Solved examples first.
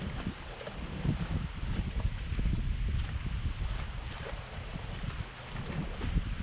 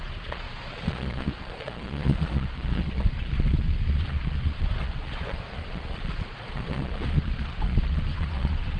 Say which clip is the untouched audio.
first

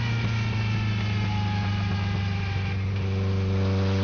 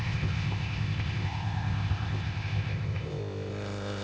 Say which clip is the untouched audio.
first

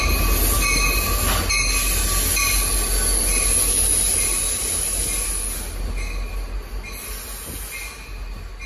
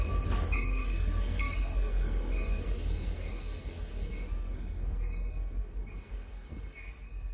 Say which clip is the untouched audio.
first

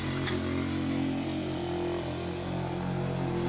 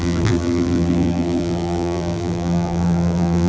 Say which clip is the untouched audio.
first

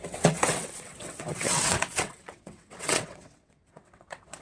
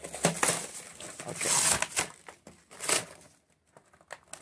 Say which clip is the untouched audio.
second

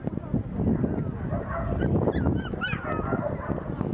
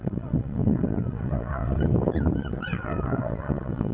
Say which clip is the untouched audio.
first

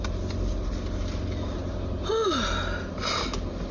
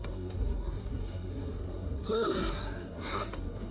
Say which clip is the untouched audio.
first